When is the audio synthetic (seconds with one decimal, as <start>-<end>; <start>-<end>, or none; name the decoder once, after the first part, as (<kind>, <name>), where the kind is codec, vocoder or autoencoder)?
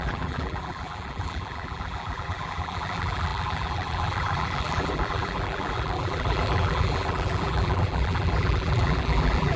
0.0-9.6 (vocoder, BigVGAN v2)